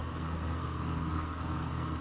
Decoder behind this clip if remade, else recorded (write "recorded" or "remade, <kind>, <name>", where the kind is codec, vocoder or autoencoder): remade, codec, SNAC